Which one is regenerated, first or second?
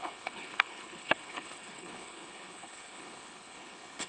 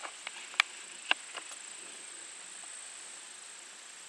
first